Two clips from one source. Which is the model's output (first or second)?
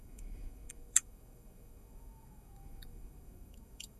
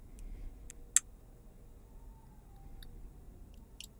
first